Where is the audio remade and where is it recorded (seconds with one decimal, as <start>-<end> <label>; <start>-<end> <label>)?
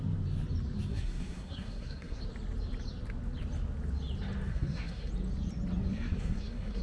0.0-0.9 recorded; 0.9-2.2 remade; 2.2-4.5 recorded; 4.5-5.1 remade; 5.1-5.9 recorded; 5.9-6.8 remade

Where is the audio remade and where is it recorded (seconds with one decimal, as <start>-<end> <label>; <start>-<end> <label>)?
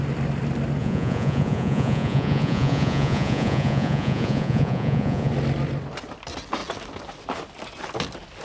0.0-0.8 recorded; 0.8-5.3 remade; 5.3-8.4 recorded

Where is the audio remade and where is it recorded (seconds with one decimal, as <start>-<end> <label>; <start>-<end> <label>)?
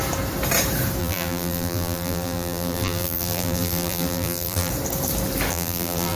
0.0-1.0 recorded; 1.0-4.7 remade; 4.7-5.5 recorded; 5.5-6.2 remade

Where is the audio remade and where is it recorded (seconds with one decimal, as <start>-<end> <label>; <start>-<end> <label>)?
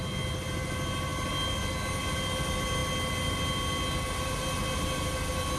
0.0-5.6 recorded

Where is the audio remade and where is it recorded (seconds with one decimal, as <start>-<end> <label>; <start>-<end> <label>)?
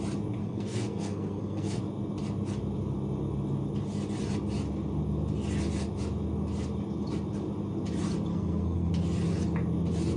0.0-0.4 recorded; 0.4-1.8 remade; 1.8-8.3 recorded; 8.3-8.9 remade; 8.9-10.2 recorded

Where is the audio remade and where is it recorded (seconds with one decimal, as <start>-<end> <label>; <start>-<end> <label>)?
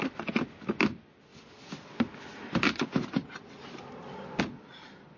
0.0-5.2 recorded